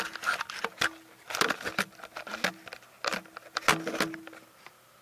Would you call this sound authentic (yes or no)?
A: yes